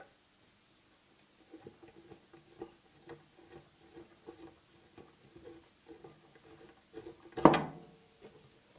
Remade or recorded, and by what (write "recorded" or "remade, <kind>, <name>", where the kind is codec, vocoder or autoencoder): recorded